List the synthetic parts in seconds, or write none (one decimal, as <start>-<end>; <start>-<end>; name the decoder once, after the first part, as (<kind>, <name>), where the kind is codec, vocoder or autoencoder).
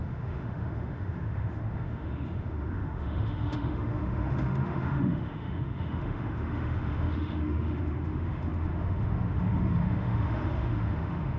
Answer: 0.0-11.4 (autoencoder, DAC-VAE)